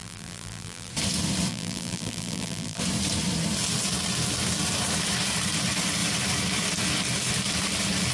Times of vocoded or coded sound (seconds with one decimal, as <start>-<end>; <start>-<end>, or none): 0.0-0.9; 1.5-2.8

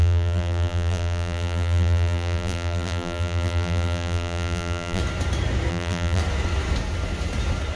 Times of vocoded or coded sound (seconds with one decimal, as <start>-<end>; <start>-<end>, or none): 0.0-5.0; 5.7-6.2

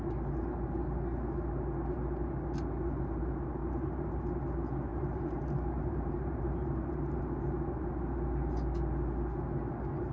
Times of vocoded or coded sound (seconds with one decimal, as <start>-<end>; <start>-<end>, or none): 3.6-4.4; 4.9-7.2

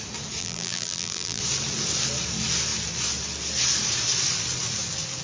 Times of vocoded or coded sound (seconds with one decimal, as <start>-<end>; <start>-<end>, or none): 0.4-1.4

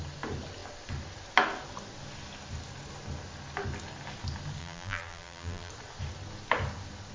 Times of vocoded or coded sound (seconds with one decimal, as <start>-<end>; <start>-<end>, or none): 4.6-5.7

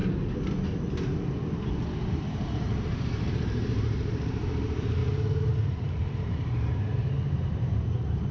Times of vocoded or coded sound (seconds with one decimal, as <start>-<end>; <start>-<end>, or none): 2.3-5.0; 5.7-8.3

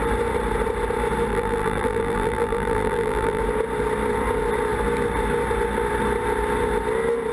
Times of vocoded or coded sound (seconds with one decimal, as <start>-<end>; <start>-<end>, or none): 1.3-3.4